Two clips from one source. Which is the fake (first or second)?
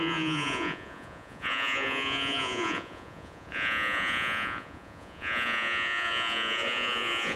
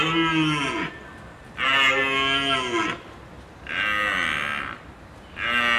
first